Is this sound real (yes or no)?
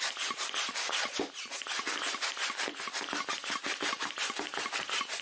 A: yes